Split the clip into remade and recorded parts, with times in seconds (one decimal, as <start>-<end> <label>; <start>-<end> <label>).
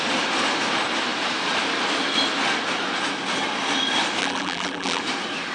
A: 0.0-4.2 recorded; 4.2-5.0 remade; 5.0-5.5 recorded